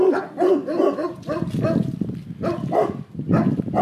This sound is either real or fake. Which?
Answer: real